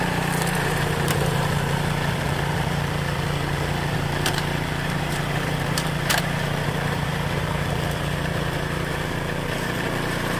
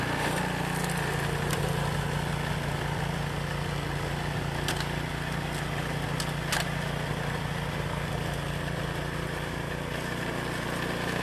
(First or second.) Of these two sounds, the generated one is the first